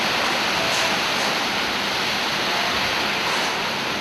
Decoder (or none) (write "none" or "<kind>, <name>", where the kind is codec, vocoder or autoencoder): none